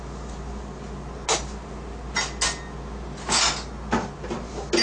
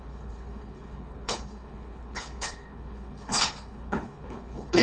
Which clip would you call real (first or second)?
first